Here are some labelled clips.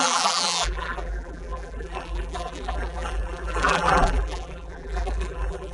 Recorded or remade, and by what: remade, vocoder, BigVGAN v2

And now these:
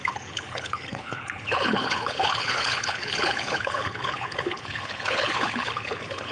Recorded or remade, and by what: remade, codec, HILCodec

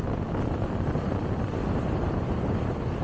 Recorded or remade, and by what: recorded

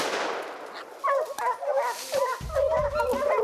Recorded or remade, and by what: recorded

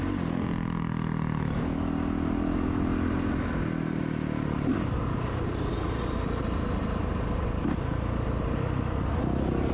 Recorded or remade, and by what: recorded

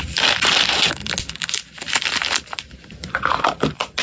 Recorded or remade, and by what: recorded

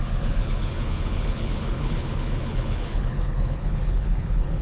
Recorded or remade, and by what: remade, codec, HILCodec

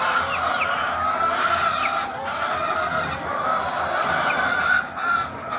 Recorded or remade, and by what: recorded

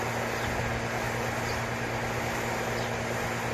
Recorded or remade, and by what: recorded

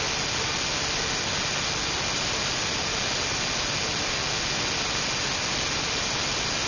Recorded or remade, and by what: recorded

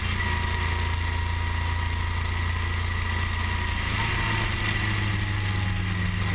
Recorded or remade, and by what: recorded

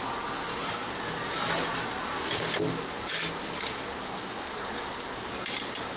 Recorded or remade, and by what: recorded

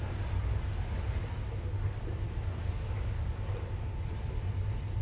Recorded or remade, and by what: recorded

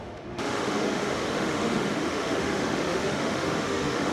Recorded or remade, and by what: remade, autoencoder, DAC-VAE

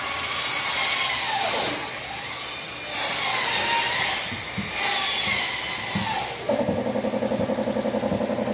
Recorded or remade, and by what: recorded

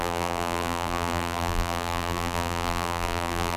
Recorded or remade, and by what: remade, vocoder, BigVGAN v2